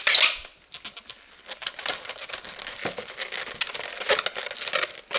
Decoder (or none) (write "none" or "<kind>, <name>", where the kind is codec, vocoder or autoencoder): none